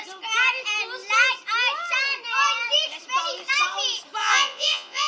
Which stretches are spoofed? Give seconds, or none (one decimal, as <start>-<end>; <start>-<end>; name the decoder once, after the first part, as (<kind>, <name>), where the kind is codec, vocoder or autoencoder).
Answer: 4.2-5.1 (vocoder, Vocos)